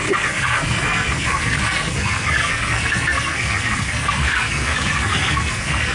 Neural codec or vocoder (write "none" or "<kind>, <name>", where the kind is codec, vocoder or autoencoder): codec, SNAC